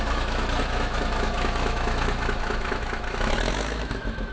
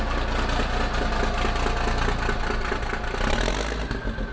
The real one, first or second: second